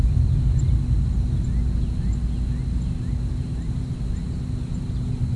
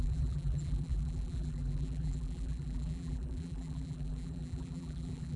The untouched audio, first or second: first